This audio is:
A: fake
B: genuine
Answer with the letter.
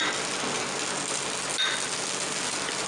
B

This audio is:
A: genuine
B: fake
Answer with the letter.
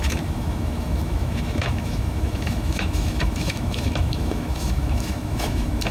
B